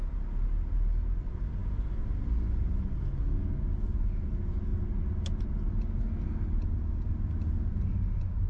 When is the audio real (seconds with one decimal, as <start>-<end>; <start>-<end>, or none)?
0.0-8.5